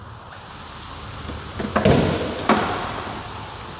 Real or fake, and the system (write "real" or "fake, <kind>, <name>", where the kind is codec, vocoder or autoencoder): real